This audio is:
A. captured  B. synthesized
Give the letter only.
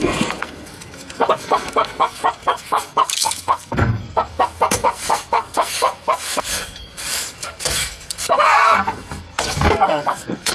B